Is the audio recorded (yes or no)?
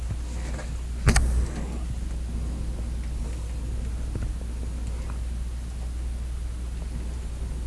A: yes